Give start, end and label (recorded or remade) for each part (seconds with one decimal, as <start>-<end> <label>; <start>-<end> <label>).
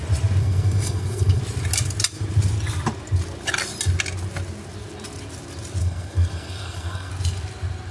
0.0-0.4 recorded; 0.4-1.4 remade; 1.4-5.8 recorded; 5.8-7.1 remade; 7.1-7.9 recorded